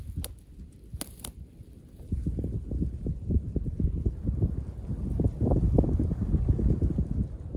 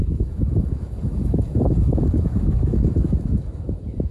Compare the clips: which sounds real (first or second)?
first